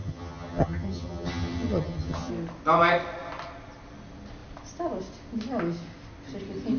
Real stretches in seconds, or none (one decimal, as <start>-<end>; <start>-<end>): 2.3-6.8